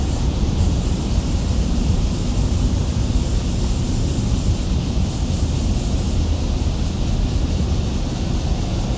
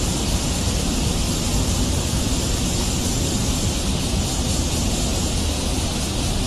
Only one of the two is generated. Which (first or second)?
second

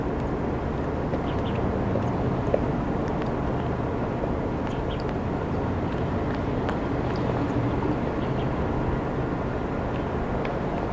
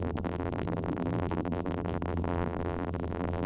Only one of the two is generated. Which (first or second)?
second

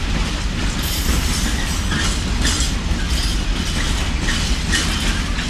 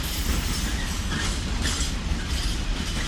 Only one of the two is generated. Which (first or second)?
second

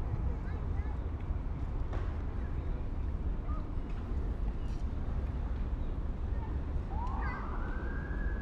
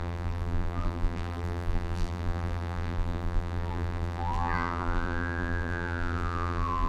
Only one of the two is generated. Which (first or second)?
second